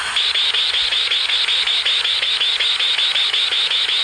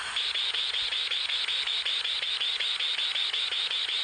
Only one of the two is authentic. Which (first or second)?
first